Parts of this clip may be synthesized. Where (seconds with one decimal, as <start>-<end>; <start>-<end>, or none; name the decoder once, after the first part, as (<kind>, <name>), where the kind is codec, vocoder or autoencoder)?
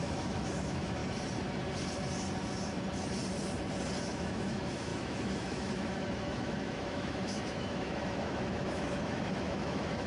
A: 0.0-1.0 (autoencoder, DAC-VAE); 4.0-10.1